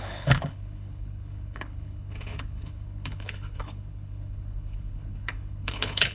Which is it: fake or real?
fake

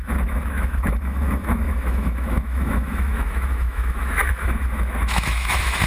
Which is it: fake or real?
fake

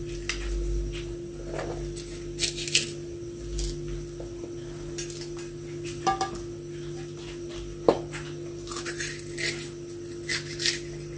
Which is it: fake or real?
real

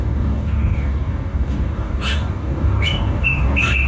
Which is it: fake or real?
fake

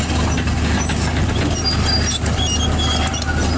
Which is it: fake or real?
real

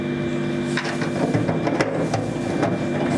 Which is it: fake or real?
real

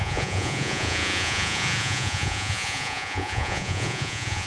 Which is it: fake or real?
fake